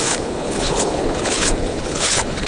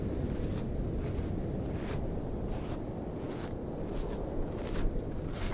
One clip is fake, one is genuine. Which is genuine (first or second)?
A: second